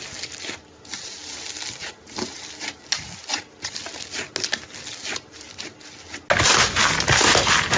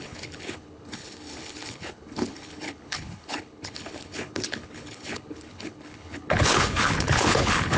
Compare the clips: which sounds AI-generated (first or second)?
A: second